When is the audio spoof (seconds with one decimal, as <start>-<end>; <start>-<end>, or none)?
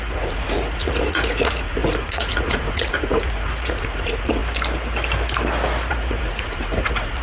0.0-4.4; 5.9-7.2